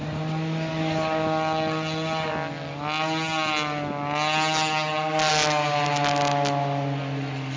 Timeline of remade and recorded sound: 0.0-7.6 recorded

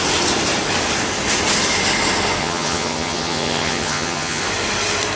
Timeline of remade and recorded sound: 0.0-2.4 recorded; 2.4-4.4 remade; 4.4-5.2 recorded

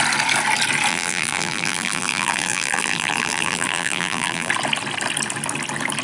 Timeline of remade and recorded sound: 0.0-0.9 recorded; 0.9-4.5 remade; 4.5-6.0 recorded

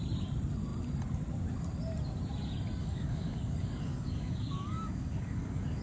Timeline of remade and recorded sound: 0.0-2.8 recorded; 2.8-5.8 remade